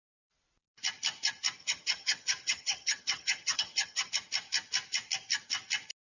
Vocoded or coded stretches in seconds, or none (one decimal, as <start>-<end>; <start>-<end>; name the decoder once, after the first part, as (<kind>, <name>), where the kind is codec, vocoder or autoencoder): 1.6-4.1 (vocoder, HiFi-GAN)